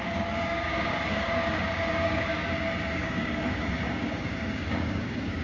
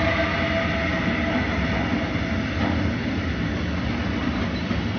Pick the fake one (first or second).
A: first